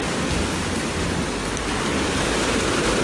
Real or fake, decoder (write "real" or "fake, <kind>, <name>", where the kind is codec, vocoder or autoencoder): real